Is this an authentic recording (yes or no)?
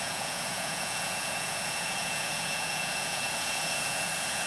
no